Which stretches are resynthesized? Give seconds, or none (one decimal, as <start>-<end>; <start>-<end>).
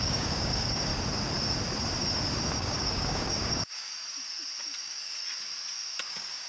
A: 0.0-0.9; 2.6-3.9; 4.8-5.2; 6.0-6.5